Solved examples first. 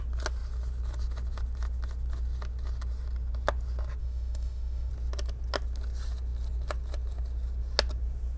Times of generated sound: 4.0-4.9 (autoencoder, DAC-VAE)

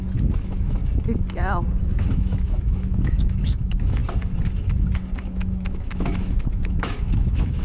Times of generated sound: 0.0-0.8 (autoencoder, DAC-VAE); 1.8-4.0; 5.2-7.6

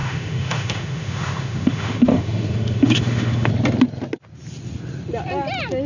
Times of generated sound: 0.0-3.5 (autoencoder, DAC-VAE)

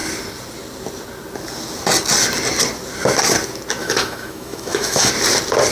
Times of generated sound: 3.8-5.1 (autoencoder, DAC-VAE)

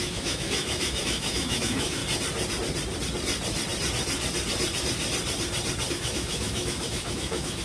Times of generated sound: 0.0-2.0 (autoencoder, DAC-VAE); 5.9-7.6

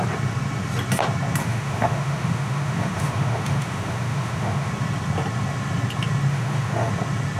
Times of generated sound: 1.4-4.7 (autoencoder, DAC-VAE); 6.3-6.9

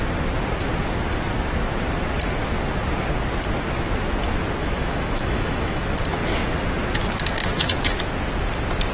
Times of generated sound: 4.6-5.8 (autoencoder, DAC-VAE)

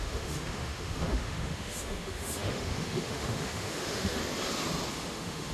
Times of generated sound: 0.0-4.2 (autoencoder, DAC-VAE); 4.9-5.5